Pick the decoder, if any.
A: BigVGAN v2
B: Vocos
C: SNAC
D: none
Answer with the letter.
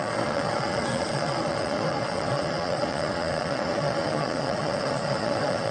B